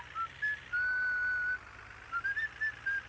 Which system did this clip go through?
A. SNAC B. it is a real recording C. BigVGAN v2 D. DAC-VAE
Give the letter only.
B